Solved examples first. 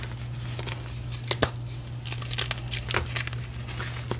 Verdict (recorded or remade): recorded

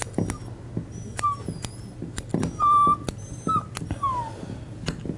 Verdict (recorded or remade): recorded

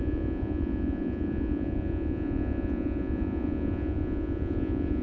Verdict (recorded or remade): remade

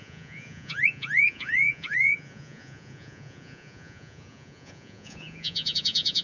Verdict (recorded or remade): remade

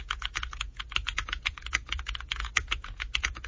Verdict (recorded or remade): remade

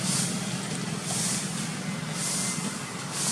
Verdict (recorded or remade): recorded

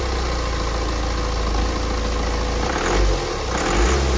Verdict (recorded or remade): recorded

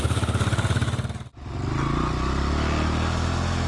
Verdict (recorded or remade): recorded